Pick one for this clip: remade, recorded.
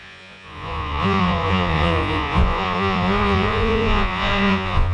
remade